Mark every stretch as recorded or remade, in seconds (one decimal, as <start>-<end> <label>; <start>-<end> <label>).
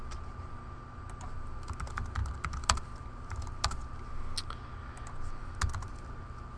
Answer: 0.0-6.6 recorded